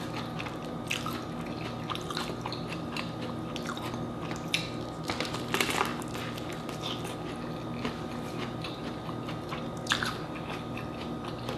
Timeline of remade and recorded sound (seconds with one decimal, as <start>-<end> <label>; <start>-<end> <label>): 0.0-11.6 recorded